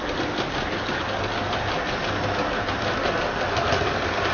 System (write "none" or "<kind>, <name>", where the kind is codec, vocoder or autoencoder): none